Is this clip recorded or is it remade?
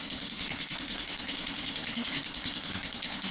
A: remade